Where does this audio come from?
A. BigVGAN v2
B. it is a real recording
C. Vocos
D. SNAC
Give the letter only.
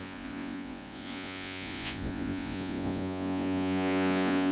C